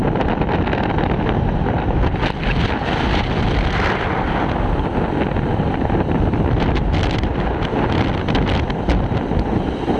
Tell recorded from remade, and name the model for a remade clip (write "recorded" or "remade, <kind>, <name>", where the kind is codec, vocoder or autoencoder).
recorded